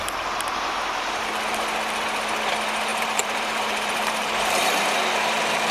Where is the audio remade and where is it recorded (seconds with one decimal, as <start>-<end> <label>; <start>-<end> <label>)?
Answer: 0.0-2.9 recorded; 2.9-4.9 remade; 4.9-5.7 recorded